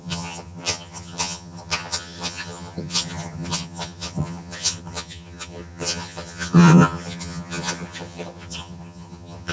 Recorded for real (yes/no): no